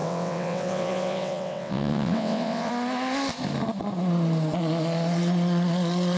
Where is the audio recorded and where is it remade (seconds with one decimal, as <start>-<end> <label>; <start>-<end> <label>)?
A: 0.0-2.7 remade; 2.7-6.2 recorded